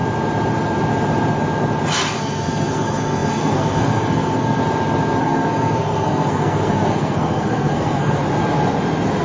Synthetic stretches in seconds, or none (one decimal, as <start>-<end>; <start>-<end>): 2.2-4.6; 5.2-8.2